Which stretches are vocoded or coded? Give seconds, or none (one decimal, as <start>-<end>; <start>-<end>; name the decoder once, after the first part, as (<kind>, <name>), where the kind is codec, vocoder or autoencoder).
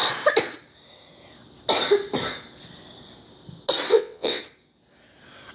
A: 3.9-4.4 (vocoder, WaveNeXt)